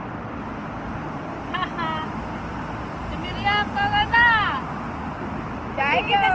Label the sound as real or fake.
real